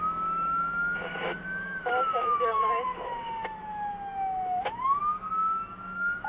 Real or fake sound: fake